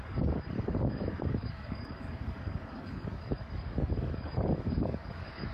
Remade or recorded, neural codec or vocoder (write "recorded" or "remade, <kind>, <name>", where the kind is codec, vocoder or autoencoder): remade, codec, DAC